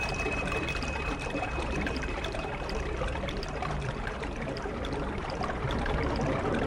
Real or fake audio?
fake